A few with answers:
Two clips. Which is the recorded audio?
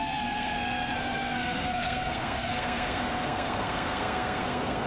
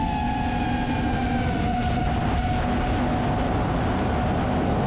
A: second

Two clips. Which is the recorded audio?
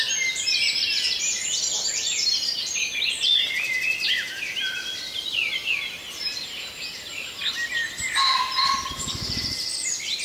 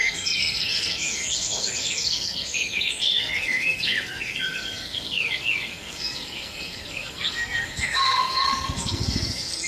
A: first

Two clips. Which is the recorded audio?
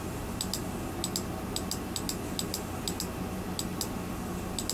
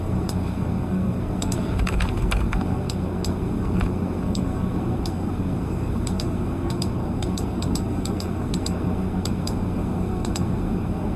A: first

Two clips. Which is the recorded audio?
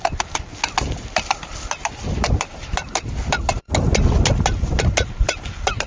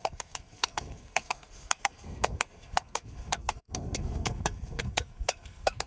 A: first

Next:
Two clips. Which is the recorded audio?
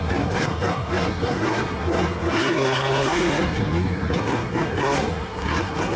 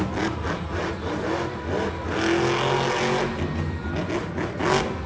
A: second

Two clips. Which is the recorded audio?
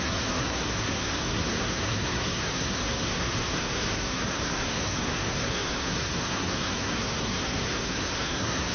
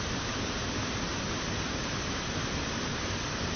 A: second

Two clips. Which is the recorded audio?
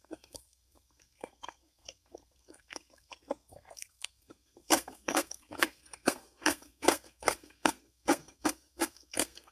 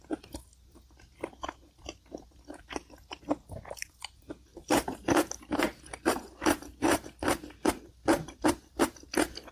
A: second